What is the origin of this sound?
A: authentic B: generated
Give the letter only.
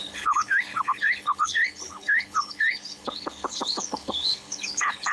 B